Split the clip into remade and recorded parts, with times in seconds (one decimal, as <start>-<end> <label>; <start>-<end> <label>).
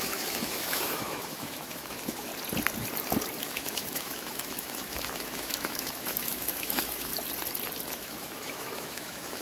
0.0-2.3 remade; 2.3-3.4 recorded; 3.4-7.1 remade; 7.1-7.9 recorded; 7.9-9.4 remade